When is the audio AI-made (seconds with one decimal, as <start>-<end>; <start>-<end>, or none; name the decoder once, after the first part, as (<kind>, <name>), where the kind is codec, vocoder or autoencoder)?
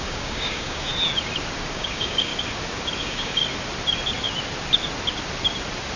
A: 0.0-0.9 (codec, DAC); 1.7-2.3; 3.0-3.4